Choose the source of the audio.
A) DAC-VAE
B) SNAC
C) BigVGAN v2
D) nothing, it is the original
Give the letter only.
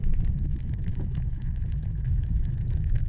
A